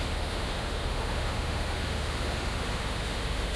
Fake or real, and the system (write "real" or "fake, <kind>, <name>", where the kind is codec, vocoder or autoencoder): fake, autoencoder, DAC-VAE